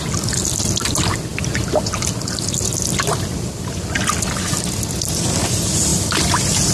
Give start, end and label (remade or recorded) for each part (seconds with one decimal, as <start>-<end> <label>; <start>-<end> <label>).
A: 0.0-6.7 recorded